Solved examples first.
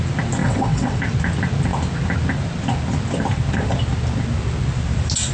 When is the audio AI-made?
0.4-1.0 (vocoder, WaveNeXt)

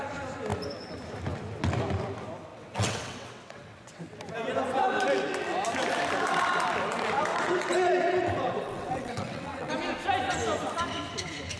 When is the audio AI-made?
2.5-4.0 (vocoder, WaveNeXt); 7.3-9.7

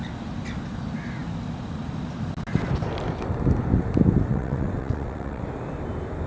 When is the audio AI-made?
4.3-5.4 (vocoder, WaveNeXt)

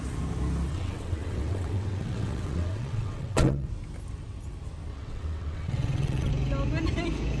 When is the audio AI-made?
0.7-3.7 (vocoder, WaveNeXt); 4.9-6.3